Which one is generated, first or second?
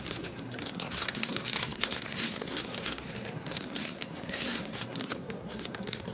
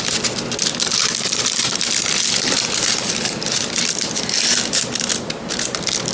first